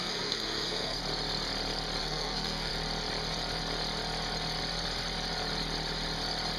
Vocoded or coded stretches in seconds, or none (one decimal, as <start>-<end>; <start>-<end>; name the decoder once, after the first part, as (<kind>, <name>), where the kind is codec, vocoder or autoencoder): 0.0-1.0 (codec, SNAC); 2.0-2.7